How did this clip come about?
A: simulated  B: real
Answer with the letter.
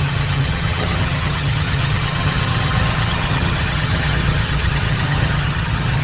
A